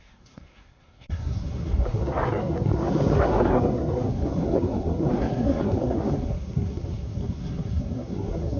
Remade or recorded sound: remade